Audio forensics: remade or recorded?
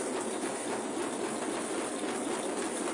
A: recorded